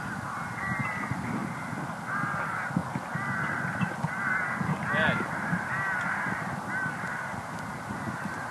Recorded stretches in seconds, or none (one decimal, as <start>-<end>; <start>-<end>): 0.0-8.5